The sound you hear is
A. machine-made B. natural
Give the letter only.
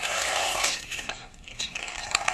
A